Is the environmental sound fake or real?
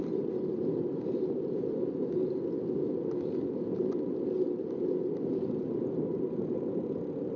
real